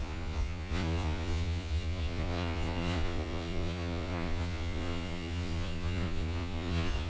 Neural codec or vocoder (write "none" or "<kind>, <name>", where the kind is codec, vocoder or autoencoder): vocoder, Vocos